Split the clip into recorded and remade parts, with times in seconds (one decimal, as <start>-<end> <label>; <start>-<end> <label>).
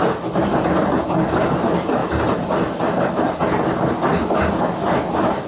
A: 0.0-5.5 recorded